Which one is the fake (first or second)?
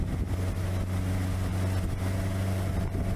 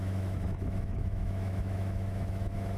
second